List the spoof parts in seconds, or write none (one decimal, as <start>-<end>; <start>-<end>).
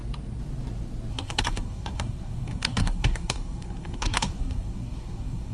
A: 1.1-5.5